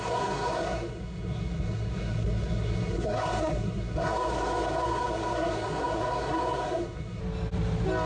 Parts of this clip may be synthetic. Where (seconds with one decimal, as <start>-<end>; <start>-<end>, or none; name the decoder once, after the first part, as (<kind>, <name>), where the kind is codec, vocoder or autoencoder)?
0.0-7.2 (codec, SNAC)